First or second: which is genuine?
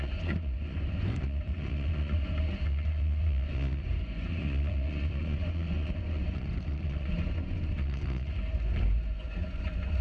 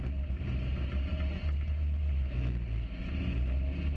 second